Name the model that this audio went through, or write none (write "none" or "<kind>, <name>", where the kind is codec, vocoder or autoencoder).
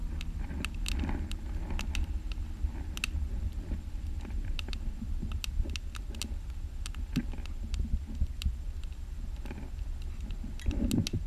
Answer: none